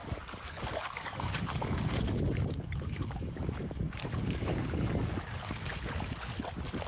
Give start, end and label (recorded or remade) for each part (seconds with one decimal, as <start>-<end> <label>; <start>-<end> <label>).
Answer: 0.0-5.7 remade; 5.7-6.9 recorded